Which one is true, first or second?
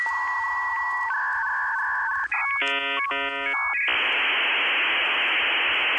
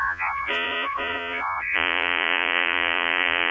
first